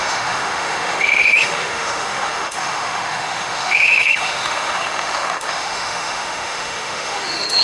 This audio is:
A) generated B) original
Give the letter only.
A